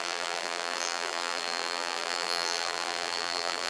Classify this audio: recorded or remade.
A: remade